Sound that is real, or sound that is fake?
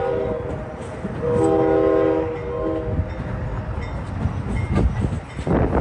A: real